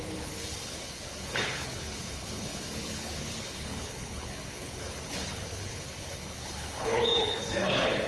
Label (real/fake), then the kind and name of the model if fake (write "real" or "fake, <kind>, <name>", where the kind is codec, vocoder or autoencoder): fake, codec, HILCodec